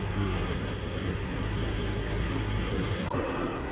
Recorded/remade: remade